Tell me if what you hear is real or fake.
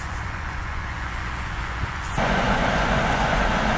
fake